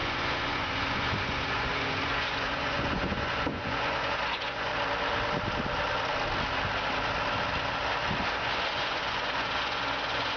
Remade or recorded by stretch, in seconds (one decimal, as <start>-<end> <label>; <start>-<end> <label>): 0.0-4.7 remade; 4.7-8.3 recorded; 8.3-10.4 remade